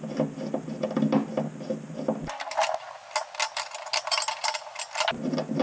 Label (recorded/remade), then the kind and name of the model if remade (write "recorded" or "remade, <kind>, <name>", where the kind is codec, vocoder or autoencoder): recorded